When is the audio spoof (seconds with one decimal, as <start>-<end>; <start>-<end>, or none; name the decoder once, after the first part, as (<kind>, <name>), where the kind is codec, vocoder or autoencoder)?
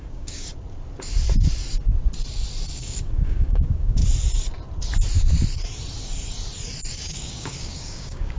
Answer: 0.0-0.5 (codec, DAC); 2.7-4.0; 6.9-8.4